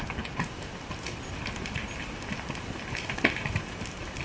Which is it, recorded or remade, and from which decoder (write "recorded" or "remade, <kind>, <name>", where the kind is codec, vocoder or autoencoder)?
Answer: recorded